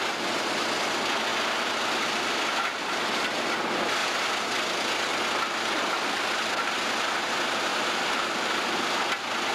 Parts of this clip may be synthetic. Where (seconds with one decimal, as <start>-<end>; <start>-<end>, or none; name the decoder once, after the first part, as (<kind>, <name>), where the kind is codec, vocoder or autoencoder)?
7.7-8.5 (vocoder, BigVGAN v2)

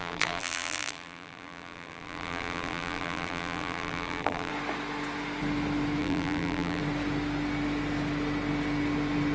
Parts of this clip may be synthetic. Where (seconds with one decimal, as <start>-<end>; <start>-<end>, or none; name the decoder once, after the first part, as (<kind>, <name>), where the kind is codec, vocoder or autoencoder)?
0.0-4.5 (vocoder, BigVGAN v2); 6.0-6.8